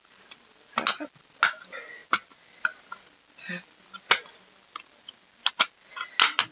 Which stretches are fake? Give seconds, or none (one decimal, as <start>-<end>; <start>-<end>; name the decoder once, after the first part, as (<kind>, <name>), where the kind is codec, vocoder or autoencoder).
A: none